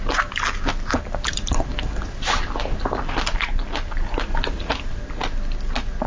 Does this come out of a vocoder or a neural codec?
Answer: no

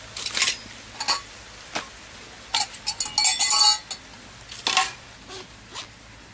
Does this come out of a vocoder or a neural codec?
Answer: no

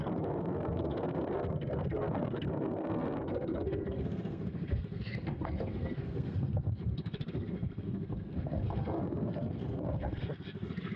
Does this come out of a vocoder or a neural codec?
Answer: yes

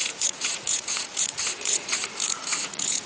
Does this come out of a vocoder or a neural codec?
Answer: yes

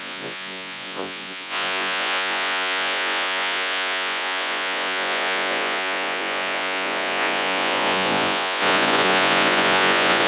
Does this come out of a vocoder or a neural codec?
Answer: yes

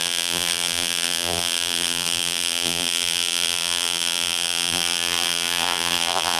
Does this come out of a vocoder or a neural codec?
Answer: yes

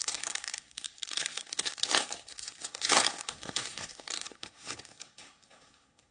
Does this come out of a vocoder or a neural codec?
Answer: yes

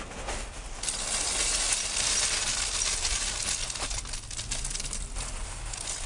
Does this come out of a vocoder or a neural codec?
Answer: no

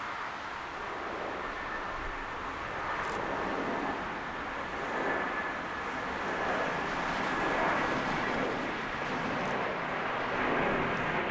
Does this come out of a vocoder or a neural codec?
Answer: no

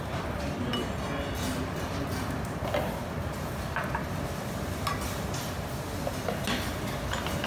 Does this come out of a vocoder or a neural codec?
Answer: no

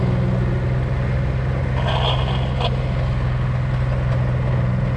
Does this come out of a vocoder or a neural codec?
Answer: no